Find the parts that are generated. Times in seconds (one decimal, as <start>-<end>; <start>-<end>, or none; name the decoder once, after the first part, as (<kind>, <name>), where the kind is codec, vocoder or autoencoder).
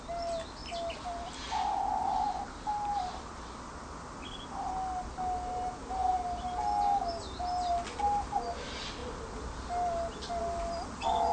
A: none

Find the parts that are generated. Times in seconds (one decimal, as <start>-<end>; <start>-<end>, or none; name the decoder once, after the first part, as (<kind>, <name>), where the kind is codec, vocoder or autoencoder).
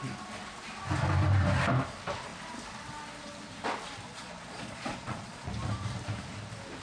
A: 4.1-5.5 (vocoder, Vocos)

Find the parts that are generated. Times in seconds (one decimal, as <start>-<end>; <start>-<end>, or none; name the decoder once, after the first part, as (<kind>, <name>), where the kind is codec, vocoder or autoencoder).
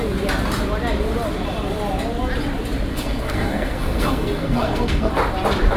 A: 2.9-5.1 (codec, SNAC)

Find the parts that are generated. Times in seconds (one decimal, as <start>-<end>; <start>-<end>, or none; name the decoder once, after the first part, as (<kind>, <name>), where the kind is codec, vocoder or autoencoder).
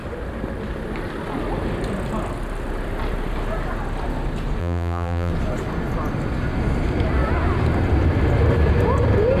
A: 4.6-5.3 (vocoder, BigVGAN v2)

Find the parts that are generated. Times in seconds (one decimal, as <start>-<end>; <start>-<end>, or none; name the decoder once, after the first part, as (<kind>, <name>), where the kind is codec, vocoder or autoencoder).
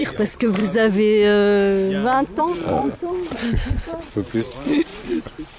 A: 0.0-0.6 (vocoder, Vocos); 2.4-5.6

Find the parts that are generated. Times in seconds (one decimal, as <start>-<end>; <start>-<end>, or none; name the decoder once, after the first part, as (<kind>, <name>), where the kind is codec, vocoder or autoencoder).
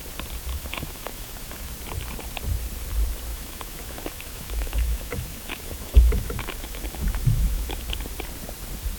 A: 0.5-1.7 (autoencoder, DAC-VAE); 3.3-8.0